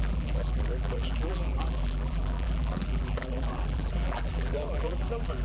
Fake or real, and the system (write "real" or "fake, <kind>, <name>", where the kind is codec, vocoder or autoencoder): fake, vocoder, BigVGAN v2